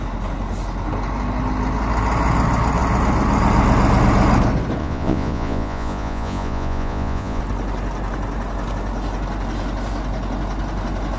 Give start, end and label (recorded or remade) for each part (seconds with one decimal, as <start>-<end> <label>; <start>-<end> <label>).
0.0-4.8 recorded; 4.8-7.4 remade; 7.4-11.2 recorded